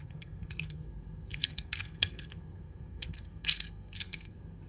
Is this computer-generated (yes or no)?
yes